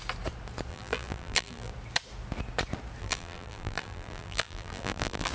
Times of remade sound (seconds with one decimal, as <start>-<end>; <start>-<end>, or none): 0.7-1.7; 3.0-5.3